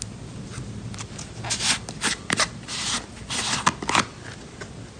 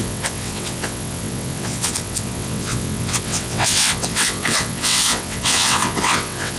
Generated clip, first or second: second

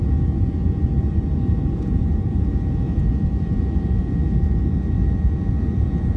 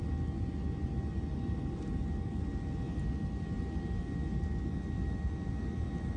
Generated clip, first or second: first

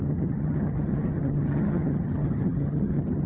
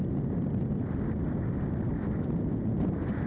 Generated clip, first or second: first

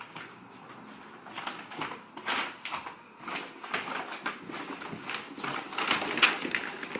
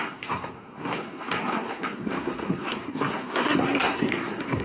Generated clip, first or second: second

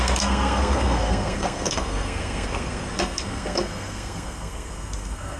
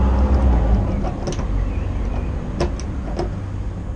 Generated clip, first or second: first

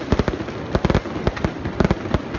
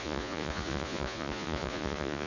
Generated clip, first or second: second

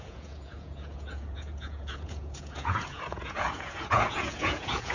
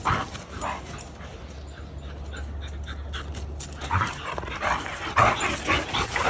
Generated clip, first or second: first